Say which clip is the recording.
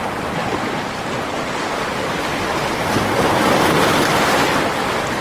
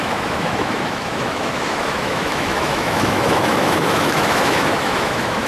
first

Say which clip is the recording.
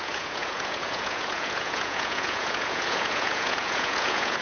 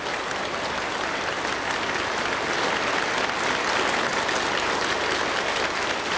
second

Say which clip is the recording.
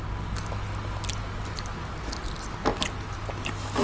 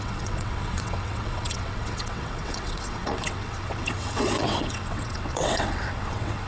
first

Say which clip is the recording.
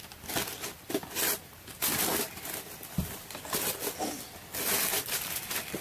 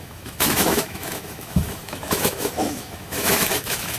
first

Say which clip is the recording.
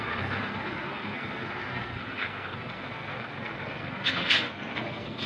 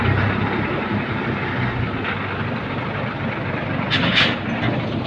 second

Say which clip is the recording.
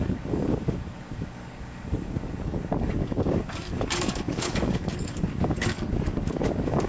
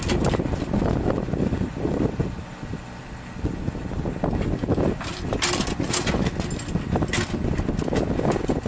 second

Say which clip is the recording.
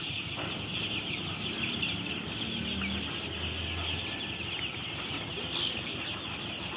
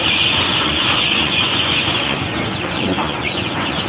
first